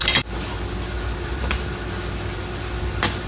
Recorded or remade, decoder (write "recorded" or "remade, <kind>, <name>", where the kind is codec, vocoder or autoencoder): recorded